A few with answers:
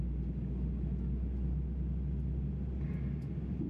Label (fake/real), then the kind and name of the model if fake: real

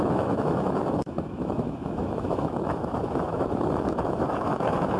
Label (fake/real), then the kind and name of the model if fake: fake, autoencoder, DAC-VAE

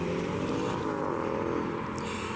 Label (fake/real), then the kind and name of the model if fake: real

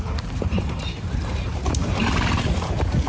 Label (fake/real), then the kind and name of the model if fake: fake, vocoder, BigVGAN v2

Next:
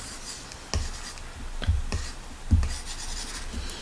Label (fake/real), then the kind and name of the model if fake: real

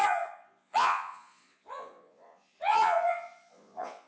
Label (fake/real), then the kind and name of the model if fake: fake, vocoder, Vocos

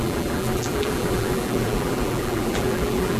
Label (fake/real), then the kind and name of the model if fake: fake, vocoder, BigVGAN v2